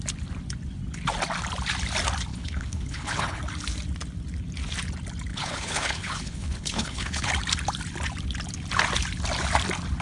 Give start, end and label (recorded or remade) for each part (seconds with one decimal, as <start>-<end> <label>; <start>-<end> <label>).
0.0-2.3 recorded; 2.3-3.4 remade; 3.4-5.3 recorded; 5.3-7.3 remade; 7.3-10.0 recorded